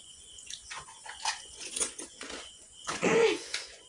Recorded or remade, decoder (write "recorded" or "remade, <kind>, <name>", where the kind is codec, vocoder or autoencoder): remade, vocoder, Vocos